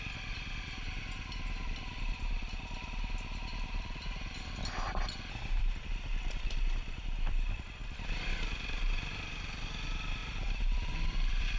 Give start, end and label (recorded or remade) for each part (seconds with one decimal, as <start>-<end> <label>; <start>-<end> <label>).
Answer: 0.0-1.6 recorded; 1.6-5.9 remade; 5.9-7.8 recorded; 7.8-8.9 remade; 8.9-10.2 recorded; 10.2-11.6 remade